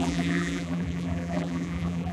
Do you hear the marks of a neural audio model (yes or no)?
yes